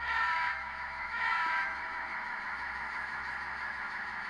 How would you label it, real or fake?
fake